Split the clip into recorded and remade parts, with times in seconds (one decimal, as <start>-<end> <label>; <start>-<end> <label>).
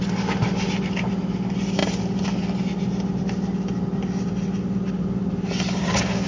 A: 0.0-6.3 recorded